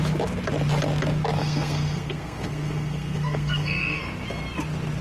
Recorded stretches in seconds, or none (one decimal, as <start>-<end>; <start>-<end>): 0.0-1.4; 4.0-5.0